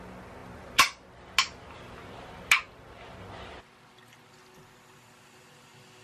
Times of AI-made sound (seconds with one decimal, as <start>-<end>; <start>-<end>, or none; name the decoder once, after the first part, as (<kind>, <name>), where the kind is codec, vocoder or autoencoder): none